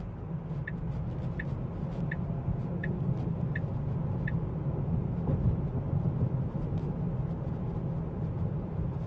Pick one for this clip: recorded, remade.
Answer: recorded